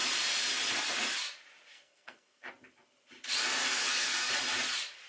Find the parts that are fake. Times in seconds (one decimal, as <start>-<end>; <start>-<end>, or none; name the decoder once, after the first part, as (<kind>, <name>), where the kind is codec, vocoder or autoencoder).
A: 1.7-2.5 (codec, SNAC); 3.6-4.3